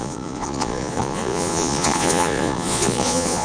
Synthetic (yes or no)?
yes